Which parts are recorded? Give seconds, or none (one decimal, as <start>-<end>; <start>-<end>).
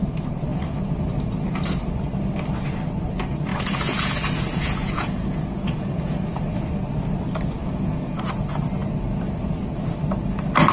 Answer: 0.0-3.5; 6.6-7.6; 8.2-10.7